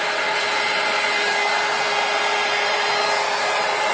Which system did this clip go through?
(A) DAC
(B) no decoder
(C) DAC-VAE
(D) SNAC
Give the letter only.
B